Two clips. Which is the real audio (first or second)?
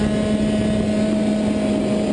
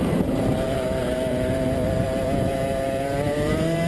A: first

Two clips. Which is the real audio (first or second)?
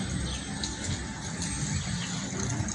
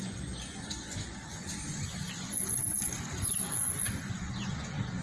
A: first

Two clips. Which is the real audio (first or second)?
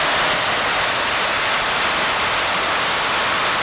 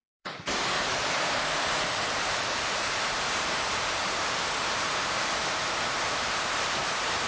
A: first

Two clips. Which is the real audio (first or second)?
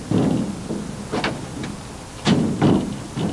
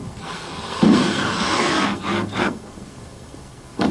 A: first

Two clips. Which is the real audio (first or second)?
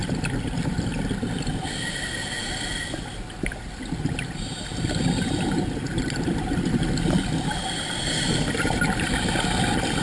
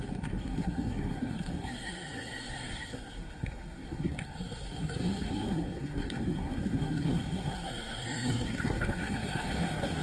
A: first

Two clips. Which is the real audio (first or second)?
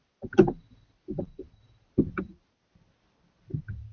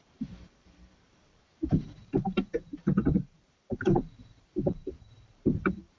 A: first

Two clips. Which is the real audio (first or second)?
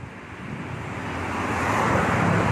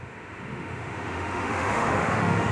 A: first